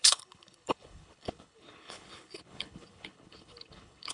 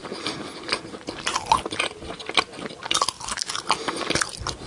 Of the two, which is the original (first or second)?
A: second